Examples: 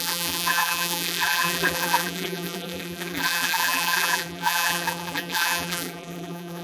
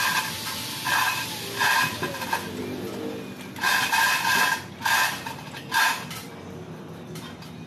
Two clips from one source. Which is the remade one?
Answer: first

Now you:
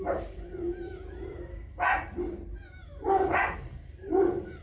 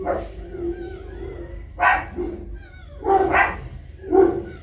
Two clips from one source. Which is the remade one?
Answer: first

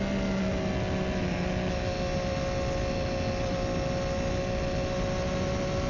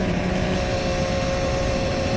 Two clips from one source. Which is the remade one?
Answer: second